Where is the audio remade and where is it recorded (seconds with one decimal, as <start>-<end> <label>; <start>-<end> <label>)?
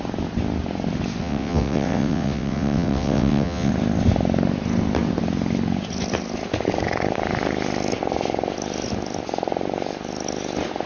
0.0-1.2 recorded; 1.2-3.7 remade; 3.7-10.9 recorded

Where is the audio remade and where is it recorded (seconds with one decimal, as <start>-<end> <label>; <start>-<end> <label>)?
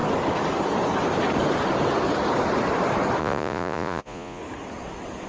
0.0-3.2 recorded; 3.2-4.4 remade; 4.4-5.3 recorded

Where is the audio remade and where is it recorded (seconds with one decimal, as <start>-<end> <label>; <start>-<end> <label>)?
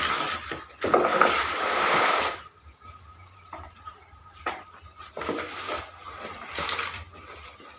0.0-1.1 recorded; 1.1-5.8 remade; 5.8-7.8 recorded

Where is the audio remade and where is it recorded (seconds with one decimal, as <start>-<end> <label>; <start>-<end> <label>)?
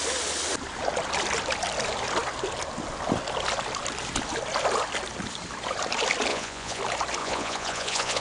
0.0-6.3 recorded; 6.3-6.8 remade; 6.8-7.2 recorded; 7.2-8.2 remade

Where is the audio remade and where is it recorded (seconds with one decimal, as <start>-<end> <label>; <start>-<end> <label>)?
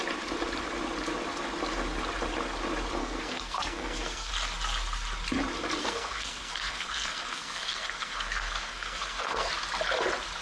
0.0-3.0 recorded; 3.0-4.3 remade; 4.3-5.8 recorded; 5.8-9.5 remade; 9.5-10.4 recorded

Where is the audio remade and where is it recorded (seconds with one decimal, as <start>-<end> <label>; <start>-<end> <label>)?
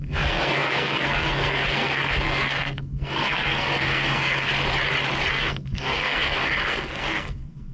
0.0-4.5 remade; 4.5-5.3 recorded; 5.3-7.7 remade